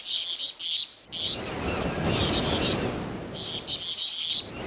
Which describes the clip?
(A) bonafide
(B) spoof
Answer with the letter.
A